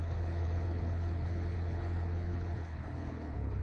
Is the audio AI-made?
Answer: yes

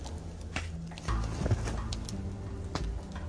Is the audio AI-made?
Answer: no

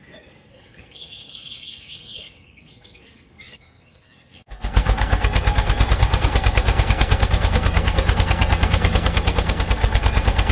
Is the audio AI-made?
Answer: yes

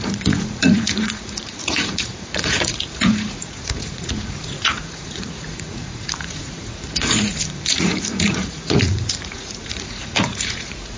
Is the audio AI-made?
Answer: yes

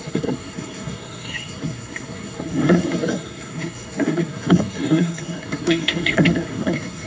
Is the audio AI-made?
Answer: yes